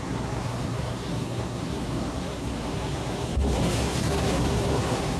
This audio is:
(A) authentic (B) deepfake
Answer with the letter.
B